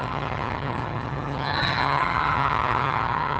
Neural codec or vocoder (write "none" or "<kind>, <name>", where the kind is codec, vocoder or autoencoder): vocoder, HiFi-GAN